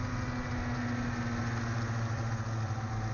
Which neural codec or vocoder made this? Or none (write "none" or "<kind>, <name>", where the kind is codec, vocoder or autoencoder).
none